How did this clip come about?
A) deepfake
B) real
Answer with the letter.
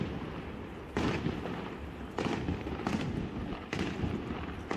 B